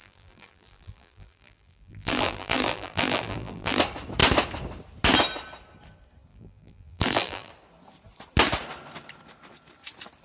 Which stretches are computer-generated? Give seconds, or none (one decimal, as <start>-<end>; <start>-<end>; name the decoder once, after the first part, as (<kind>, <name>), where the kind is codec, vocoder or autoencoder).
0.0-3.8 (vocoder, BigVGAN v2); 6.3-7.5